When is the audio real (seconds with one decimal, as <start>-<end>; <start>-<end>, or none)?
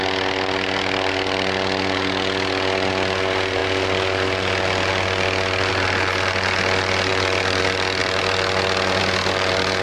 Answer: 0.0-8.0; 9.0-9.8